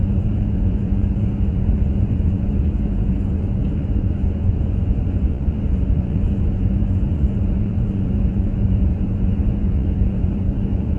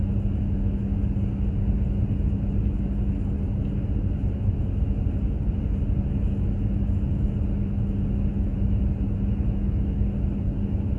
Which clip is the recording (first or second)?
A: second